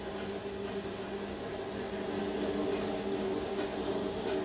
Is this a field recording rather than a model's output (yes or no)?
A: yes